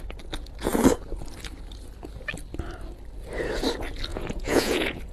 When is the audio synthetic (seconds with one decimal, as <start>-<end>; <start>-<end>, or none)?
4.1-5.1